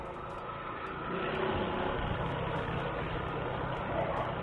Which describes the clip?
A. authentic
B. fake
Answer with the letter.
A